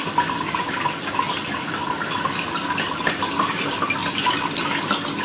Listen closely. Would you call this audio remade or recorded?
recorded